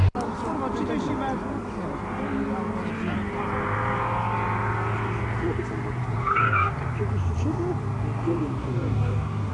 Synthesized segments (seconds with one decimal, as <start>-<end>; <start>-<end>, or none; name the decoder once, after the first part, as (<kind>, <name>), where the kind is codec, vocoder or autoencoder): 6.2-6.7 (codec, DAC); 8.6-9.5